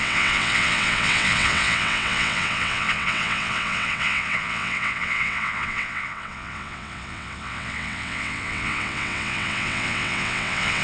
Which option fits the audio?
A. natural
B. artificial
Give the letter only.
B